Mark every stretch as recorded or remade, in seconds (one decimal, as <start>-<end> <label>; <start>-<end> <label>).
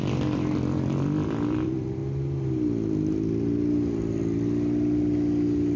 0.0-2.0 remade; 2.0-5.8 recorded